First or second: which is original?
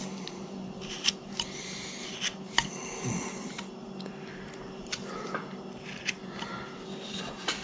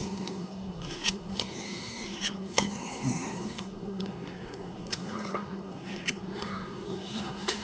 first